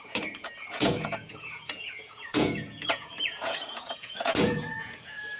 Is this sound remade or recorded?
remade